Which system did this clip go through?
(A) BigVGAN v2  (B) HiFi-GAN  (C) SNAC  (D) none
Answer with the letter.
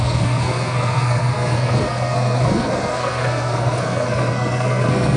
C